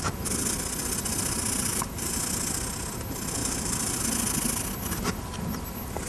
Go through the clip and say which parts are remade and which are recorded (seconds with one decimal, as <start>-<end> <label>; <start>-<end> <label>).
0.0-1.7 recorded; 1.7-2.2 remade; 2.2-3.4 recorded; 3.4-4.0 remade; 4.0-6.1 recorded